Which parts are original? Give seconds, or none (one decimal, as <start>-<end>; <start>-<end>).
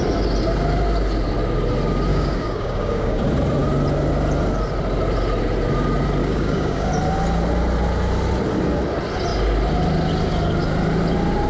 0.0-2.1; 3.2-6.2; 6.9-11.5